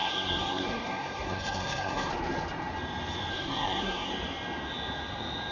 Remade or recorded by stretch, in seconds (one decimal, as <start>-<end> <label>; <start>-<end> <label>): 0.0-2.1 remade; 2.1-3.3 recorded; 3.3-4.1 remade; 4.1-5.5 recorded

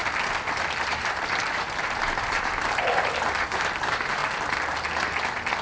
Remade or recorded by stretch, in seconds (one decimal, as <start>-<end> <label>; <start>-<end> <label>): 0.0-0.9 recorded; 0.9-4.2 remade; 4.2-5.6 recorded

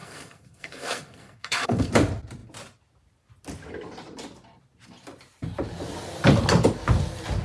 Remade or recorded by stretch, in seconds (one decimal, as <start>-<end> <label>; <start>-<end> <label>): 0.0-1.9 remade; 1.9-7.4 recorded

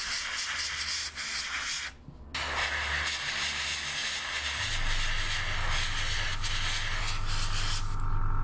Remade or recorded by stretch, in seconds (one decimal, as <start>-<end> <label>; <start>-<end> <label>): 0.0-8.4 recorded

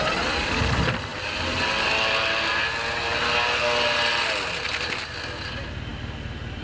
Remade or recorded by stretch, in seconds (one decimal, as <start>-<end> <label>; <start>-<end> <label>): 0.0-6.6 recorded

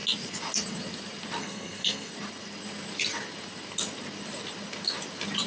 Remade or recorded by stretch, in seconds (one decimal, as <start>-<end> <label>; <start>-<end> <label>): 0.0-1.4 recorded; 1.4-2.1 remade; 2.1-5.5 recorded

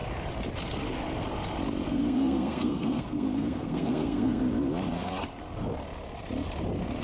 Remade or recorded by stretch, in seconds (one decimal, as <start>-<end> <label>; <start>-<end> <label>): 0.0-1.9 recorded; 1.9-4.4 remade; 4.4-7.0 recorded

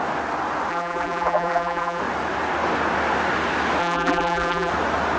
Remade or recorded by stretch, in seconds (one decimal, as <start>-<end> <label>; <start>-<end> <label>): 0.0-0.7 recorded; 0.7-2.0 remade; 2.0-3.8 recorded; 3.8-4.7 remade; 4.7-5.2 recorded